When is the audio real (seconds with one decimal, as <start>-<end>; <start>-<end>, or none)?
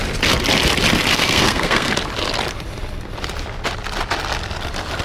0.0-1.1; 1.9-5.0